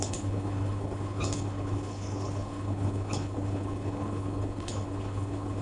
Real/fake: fake